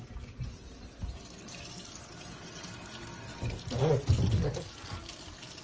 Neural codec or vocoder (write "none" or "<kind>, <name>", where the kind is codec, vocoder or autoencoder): none